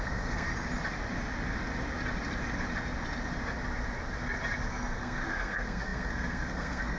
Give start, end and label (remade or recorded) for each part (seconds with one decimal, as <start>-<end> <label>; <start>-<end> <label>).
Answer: 0.0-0.5 remade; 0.5-4.7 recorded; 4.7-7.0 remade